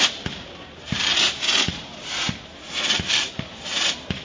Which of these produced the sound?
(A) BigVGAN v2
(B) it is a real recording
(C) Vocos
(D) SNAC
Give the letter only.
A